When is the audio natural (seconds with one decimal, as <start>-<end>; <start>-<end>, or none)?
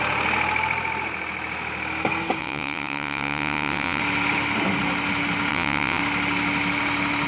0.0-2.4; 4.0-5.5; 6.0-7.3